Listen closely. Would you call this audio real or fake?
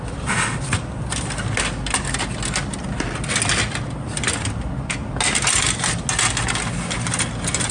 real